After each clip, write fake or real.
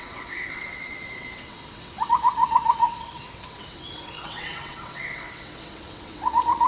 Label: fake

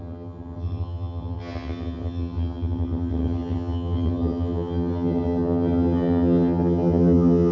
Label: fake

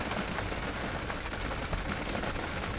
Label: fake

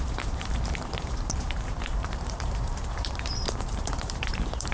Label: fake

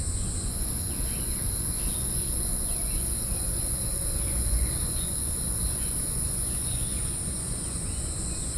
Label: fake